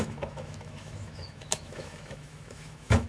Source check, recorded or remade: remade